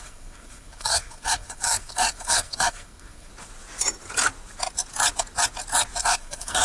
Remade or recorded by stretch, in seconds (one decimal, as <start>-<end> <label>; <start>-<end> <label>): 0.0-3.3 remade; 3.3-6.0 recorded; 6.0-6.6 remade